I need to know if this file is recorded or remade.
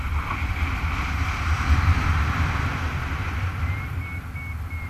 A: recorded